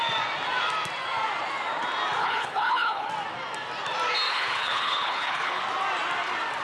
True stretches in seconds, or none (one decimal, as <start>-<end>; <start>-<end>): 0.0-2.2; 3.1-4.3; 5.6-6.6